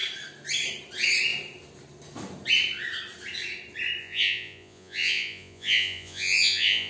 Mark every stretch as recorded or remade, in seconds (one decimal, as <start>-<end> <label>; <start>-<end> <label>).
0.0-4.0 recorded; 4.0-6.9 remade